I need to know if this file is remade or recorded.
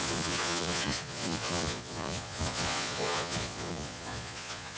remade